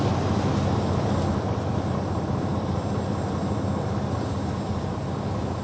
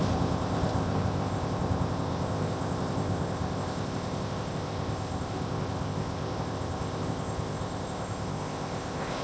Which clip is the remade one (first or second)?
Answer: second